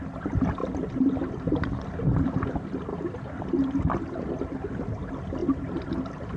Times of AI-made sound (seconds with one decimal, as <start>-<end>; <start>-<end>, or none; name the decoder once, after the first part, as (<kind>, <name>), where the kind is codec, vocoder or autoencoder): 0.6-1.4 (vocoder, BigVGAN v2); 2.9-3.4